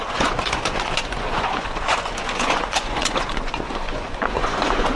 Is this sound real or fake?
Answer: fake